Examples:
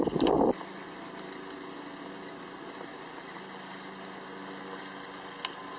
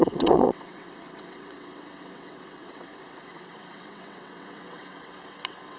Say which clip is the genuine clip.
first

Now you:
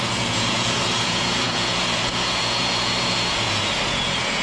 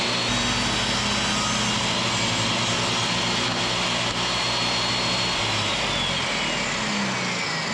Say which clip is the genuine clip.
second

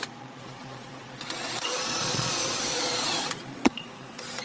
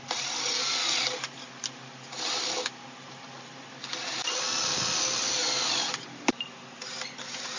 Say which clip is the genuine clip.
second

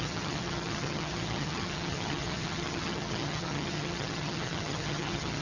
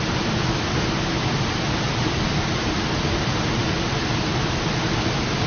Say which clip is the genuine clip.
second